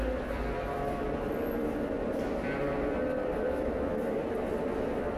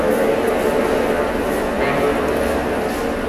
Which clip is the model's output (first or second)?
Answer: first